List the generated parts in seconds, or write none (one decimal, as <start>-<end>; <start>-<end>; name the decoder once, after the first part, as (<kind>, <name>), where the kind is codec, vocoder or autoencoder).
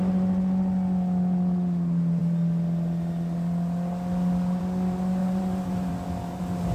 5.2-5.9 (vocoder, BigVGAN v2)